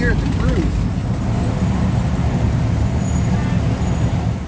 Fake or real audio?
real